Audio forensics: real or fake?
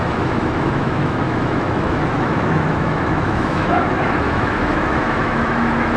fake